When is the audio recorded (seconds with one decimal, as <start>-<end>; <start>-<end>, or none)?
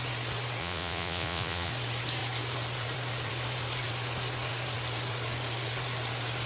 0.0-0.6; 1.7-6.5